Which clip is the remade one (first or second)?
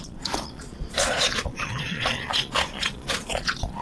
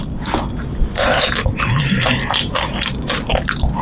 first